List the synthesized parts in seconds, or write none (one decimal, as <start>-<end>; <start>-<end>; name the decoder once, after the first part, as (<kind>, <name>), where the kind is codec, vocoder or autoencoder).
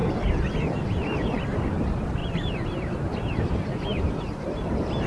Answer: 2.2-4.1 (vocoder, BigVGAN v2)